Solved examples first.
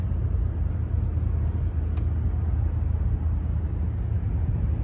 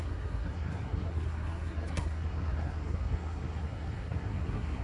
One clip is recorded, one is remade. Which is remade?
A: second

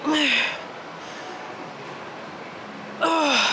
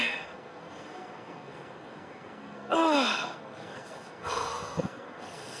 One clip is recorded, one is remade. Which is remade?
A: second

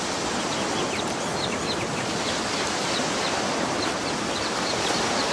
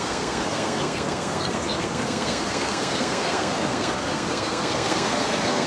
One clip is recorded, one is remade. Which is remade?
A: second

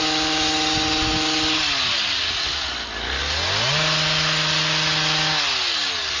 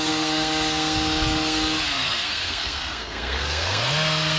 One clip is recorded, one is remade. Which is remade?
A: second